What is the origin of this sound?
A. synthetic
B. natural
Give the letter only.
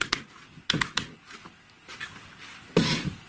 B